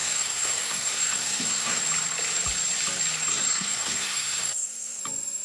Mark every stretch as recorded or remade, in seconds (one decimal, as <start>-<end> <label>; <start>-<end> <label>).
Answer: 0.0-1.8 remade; 1.8-3.3 recorded; 3.3-5.0 remade; 5.0-5.4 recorded